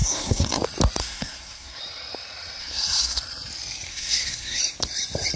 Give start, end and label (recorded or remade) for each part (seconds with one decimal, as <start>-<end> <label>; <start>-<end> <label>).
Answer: 0.0-0.6 remade; 0.6-1.0 recorded; 1.0-1.8 remade; 1.8-2.6 recorded; 2.6-3.2 remade; 3.2-3.9 recorded; 3.9-4.6 remade; 4.6-5.4 recorded